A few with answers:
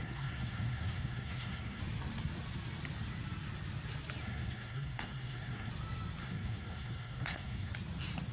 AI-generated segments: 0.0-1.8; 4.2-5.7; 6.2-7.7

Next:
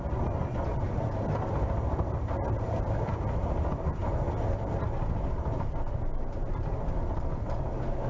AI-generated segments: none

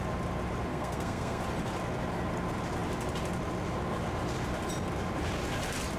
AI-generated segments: 0.7-1.4

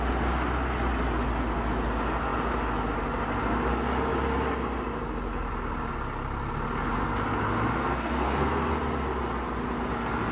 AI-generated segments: 7.8-8.7